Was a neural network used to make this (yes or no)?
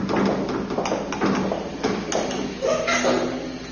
no